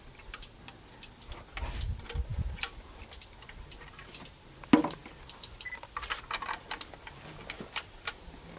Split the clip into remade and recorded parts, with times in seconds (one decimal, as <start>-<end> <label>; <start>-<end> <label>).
0.0-8.6 recorded